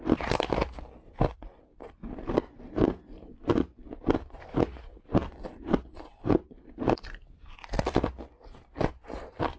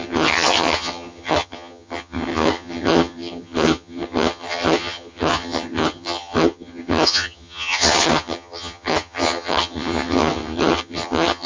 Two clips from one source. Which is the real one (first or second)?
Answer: first